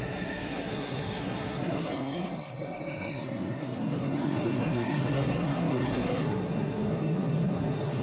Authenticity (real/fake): fake